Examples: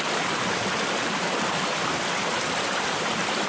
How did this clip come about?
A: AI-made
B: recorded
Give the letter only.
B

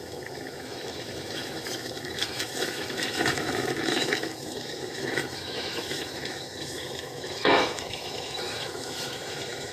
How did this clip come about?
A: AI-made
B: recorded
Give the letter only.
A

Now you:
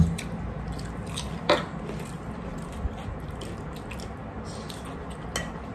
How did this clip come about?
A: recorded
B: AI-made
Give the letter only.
A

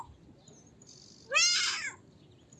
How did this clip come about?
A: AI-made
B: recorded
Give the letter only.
B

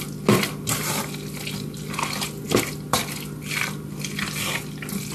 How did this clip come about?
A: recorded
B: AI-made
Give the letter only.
A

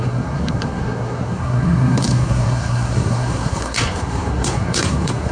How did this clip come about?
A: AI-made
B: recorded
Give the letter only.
A